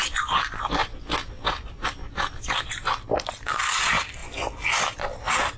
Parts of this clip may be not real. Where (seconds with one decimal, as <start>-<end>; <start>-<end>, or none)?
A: none